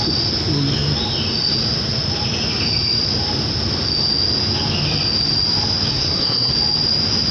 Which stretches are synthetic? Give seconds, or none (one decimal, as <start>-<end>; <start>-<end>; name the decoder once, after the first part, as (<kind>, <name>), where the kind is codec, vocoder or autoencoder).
5.9-6.5 (codec, SNAC)